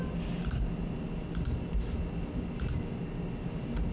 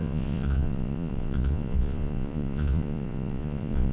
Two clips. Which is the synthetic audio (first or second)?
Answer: second